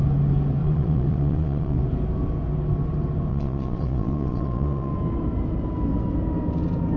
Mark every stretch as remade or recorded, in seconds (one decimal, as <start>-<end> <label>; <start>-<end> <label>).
0.0-0.6 recorded; 0.6-1.8 remade; 1.8-3.3 recorded; 3.3-4.9 remade; 4.9-7.0 recorded